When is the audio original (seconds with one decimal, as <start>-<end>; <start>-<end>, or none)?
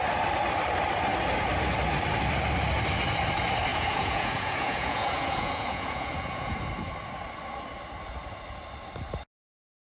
0.0-3.7; 6.6-10.0